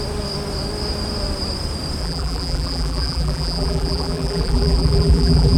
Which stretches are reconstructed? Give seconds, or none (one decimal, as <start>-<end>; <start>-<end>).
2.0-5.6